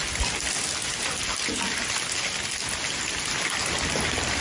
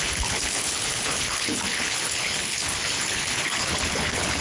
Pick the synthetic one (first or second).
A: second